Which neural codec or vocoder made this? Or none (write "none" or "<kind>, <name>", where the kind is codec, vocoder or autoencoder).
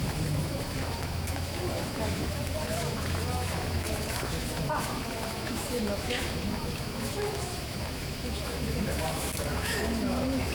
autoencoder, DAC-VAE